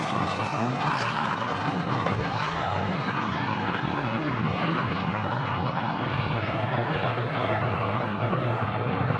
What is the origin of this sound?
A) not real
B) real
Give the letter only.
A